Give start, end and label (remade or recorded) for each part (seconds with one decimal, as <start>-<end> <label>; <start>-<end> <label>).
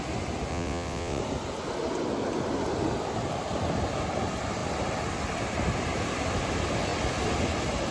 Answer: 0.0-0.5 recorded; 0.5-1.2 remade; 1.2-7.9 recorded